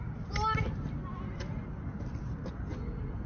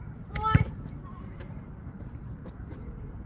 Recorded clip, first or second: first